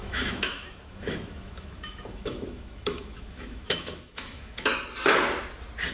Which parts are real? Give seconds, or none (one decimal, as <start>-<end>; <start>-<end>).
4.7-5.9